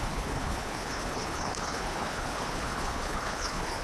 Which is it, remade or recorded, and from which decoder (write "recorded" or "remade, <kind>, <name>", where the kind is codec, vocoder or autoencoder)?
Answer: remade, codec, HILCodec